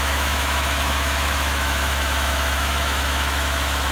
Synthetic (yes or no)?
yes